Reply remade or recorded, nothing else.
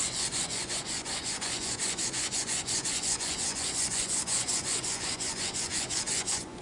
remade